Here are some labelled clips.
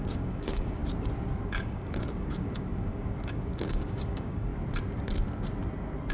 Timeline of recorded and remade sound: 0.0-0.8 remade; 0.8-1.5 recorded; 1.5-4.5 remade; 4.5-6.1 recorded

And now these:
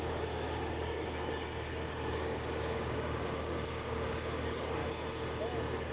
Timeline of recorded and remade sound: 0.0-4.8 remade; 4.8-5.9 recorded

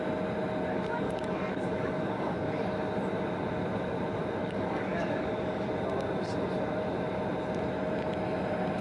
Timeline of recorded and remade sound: 0.0-0.7 recorded; 0.7-2.6 remade; 2.6-4.4 recorded; 4.4-5.7 remade; 5.7-8.8 recorded